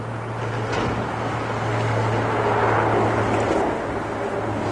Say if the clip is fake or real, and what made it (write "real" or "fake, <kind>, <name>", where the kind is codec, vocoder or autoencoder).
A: real